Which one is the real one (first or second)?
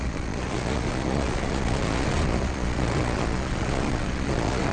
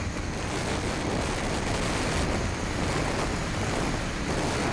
second